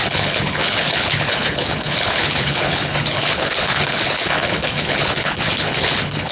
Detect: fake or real fake